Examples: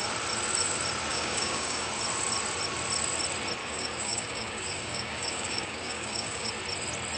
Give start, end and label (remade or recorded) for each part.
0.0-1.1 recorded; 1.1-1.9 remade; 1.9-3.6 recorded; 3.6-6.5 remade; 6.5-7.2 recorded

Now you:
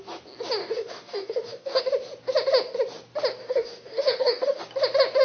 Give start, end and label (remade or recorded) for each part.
0.0-0.6 recorded; 0.6-1.8 remade; 1.8-3.4 recorded; 3.4-4.6 remade; 4.6-5.2 recorded

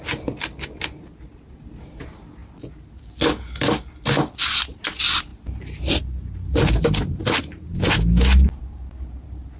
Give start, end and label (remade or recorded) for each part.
0.0-9.6 recorded

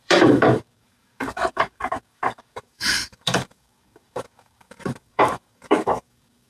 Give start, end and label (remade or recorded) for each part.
0.0-6.5 remade

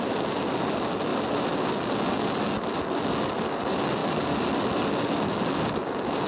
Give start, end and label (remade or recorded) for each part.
0.0-6.3 recorded

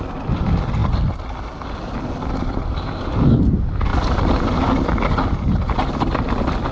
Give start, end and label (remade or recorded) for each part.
0.0-6.7 recorded